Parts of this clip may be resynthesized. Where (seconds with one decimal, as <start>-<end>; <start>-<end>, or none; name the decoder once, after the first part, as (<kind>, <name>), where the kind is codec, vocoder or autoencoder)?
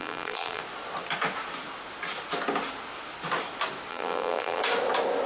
0.0-0.6 (vocoder, BigVGAN v2); 3.9-4.6